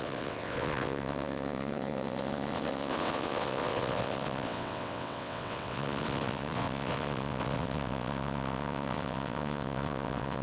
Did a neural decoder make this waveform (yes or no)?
yes